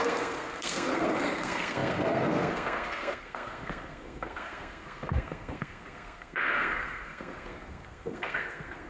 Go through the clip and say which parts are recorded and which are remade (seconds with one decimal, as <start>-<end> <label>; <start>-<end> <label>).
0.0-8.9 remade